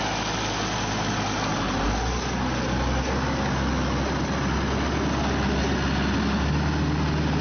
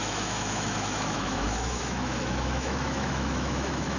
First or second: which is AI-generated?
second